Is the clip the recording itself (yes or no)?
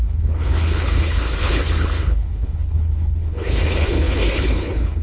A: no